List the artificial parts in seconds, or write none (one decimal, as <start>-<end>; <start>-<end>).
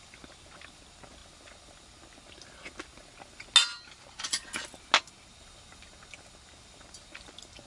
none